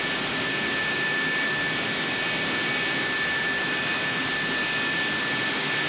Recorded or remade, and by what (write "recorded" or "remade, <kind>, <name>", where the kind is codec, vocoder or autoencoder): recorded